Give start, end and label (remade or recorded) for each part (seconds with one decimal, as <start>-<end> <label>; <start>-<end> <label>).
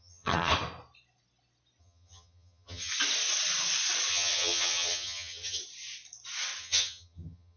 0.0-0.5 remade; 0.5-1.8 recorded; 1.8-2.9 remade; 2.9-4.1 recorded; 4.1-5.6 remade; 5.6-6.6 recorded; 6.6-7.6 remade